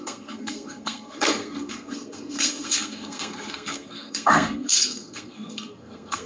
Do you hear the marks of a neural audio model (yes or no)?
yes